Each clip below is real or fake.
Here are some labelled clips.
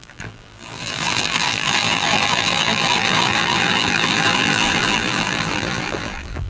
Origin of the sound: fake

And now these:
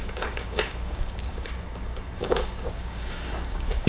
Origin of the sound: fake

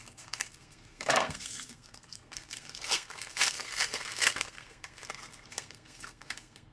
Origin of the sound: fake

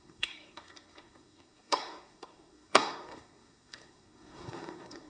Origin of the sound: fake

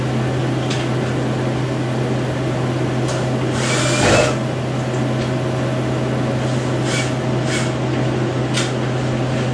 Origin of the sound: real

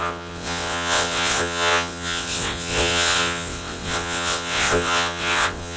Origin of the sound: fake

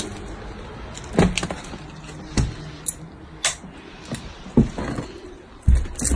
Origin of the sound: real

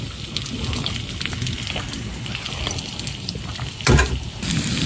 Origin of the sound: real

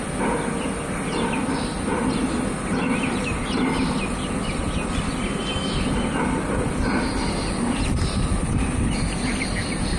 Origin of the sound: real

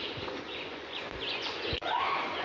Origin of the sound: fake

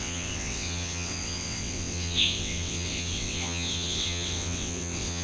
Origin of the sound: fake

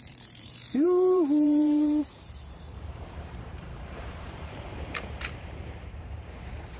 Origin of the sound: fake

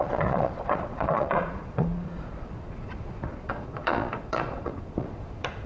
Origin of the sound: fake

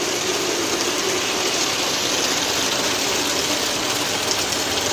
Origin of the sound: fake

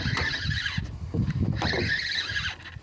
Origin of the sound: real